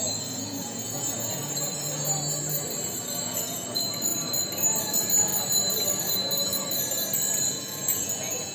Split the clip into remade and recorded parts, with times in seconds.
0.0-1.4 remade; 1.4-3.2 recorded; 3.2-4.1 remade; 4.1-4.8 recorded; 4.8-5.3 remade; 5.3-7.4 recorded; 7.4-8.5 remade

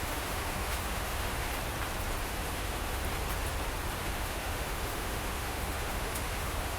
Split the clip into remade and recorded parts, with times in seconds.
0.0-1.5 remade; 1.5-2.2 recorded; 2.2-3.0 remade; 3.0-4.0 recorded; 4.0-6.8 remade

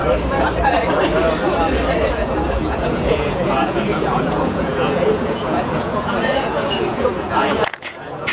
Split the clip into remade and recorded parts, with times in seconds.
0.0-2.1 recorded; 2.1-8.3 remade

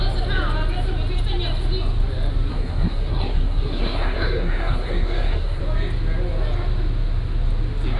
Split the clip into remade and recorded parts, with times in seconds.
0.0-2.5 recorded; 2.5-5.6 remade; 5.6-8.0 recorded